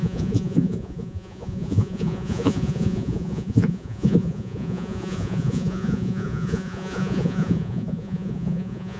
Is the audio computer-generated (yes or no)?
yes